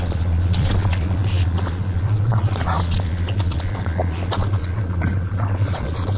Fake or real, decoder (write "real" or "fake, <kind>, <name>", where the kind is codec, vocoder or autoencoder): fake, vocoder, Vocos